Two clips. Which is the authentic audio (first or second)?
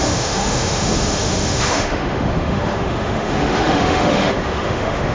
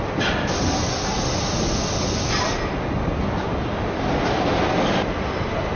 second